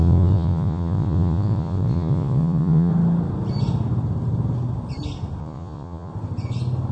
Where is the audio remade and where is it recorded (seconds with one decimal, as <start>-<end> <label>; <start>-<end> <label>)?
0.0-2.9 remade; 2.9-5.4 recorded; 5.4-6.1 remade; 6.1-6.9 recorded